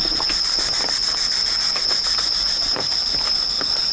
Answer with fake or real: real